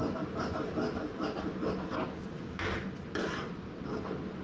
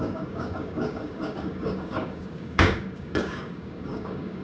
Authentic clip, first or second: first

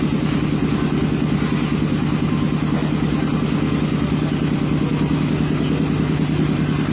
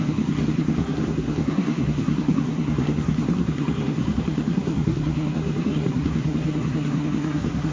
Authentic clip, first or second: first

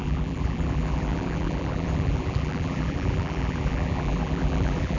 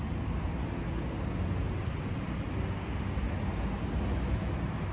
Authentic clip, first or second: second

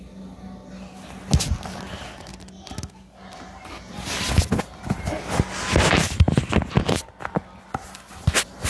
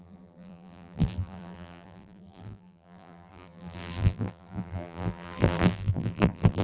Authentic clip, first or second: first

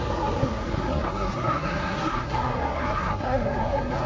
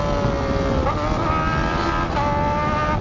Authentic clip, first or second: second